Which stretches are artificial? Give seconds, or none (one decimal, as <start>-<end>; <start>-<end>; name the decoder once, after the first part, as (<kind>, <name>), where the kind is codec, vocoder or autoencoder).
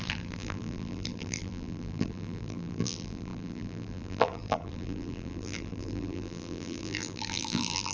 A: 0.0-7.9 (vocoder, BigVGAN v2)